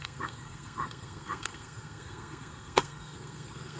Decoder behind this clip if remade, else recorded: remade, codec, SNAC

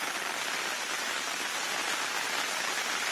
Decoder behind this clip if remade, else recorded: recorded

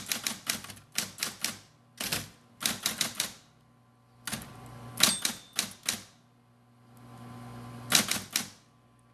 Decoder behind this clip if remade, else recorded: recorded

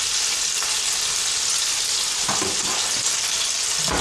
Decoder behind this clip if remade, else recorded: recorded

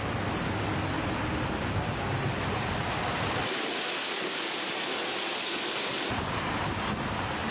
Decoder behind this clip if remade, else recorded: recorded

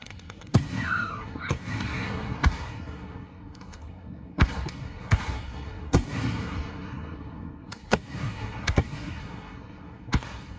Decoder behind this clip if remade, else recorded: remade, codec, SNAC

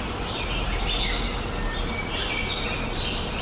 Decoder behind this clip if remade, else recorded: recorded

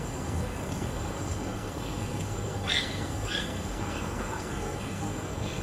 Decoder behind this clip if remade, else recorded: remade, codec, SNAC